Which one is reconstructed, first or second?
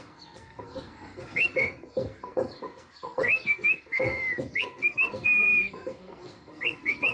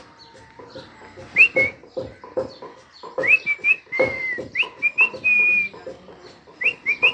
first